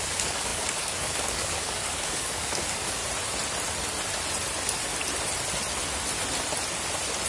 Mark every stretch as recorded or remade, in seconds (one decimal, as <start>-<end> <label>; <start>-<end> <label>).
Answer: 0.0-3.0 remade; 3.0-7.3 recorded

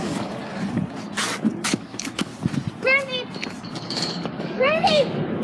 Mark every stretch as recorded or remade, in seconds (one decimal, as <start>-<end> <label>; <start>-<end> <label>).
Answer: 0.0-0.4 remade; 0.4-1.7 recorded; 1.7-2.3 remade; 2.3-3.6 recorded; 3.6-5.4 remade

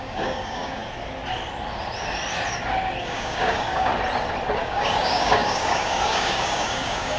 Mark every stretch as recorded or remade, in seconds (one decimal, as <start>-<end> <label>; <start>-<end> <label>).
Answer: 0.0-0.8 remade; 0.8-3.0 recorded; 3.0-3.9 remade; 3.9-4.6 recorded; 4.6-7.2 remade